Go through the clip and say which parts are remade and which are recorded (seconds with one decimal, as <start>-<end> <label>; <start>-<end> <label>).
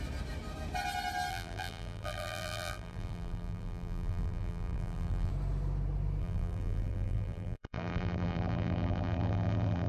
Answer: 0.0-1.3 recorded; 1.3-5.3 remade; 5.3-6.2 recorded; 6.2-9.9 remade